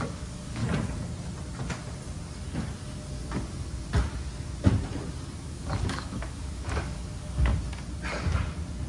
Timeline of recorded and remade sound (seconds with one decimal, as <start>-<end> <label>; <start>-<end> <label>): 0.0-0.6 remade; 0.6-5.4 recorded; 5.4-7.5 remade; 7.5-8.9 recorded